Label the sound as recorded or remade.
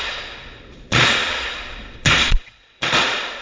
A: remade